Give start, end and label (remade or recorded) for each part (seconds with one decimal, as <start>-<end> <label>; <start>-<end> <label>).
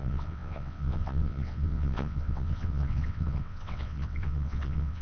0.0-5.0 remade